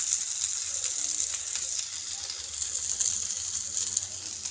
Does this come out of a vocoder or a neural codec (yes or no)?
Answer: no